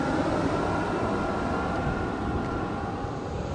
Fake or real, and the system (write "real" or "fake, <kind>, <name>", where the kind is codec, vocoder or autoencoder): real